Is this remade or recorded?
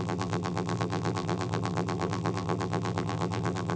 remade